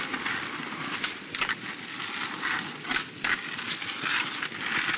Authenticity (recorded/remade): recorded